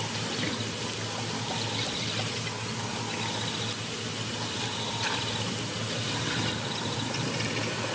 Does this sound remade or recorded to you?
recorded